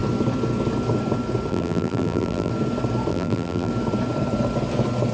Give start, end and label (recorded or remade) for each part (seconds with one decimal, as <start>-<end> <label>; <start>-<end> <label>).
0.0-1.5 recorded; 1.5-2.5 remade; 2.5-3.1 recorded; 3.1-3.7 remade; 3.7-5.1 recorded